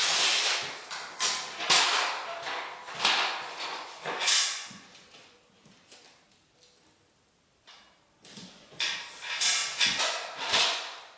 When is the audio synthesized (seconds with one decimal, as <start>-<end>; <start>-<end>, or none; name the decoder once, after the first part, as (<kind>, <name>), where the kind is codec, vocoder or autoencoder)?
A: 3.0-5.4 (vocoder, Vocos); 8.4-9.1; 9.6-11.2